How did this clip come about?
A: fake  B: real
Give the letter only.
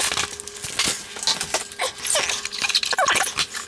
B